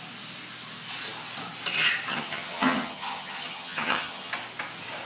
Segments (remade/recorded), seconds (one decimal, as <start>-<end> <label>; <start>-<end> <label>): 0.0-2.1 recorded; 2.1-4.3 remade; 4.3-5.0 recorded